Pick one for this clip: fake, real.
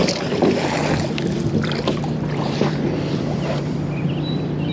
fake